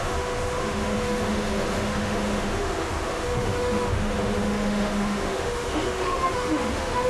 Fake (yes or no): yes